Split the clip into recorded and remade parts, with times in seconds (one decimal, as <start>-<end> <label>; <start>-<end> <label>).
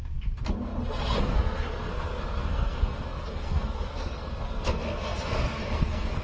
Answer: 0.0-0.7 remade; 0.7-1.2 recorded; 1.2-6.2 remade